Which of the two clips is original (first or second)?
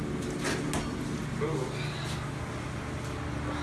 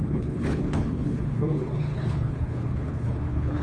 first